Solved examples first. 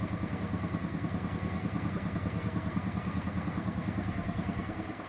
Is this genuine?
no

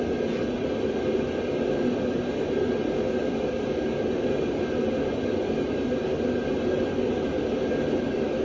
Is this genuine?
yes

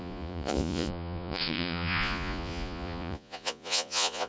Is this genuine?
no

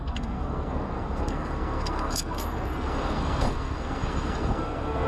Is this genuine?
no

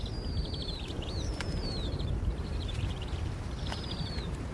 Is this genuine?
no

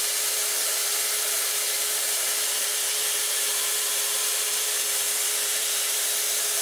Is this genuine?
no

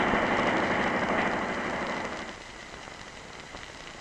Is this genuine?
yes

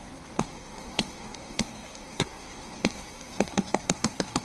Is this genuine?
no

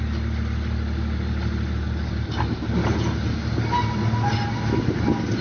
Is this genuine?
yes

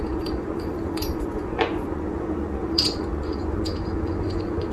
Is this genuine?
no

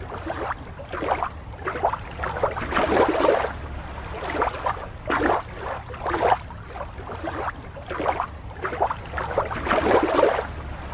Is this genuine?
yes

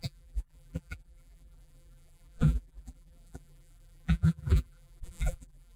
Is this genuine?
no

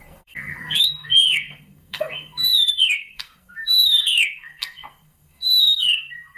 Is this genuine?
no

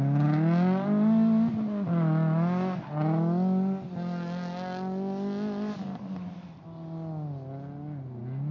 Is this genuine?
yes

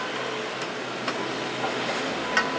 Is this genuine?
yes